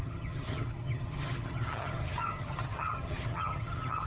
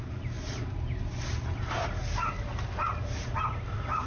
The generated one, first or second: first